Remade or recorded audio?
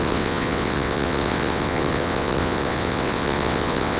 remade